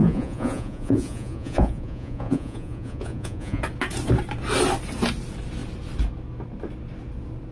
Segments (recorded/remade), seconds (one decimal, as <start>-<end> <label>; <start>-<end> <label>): 0.0-3.6 remade; 3.6-7.5 recorded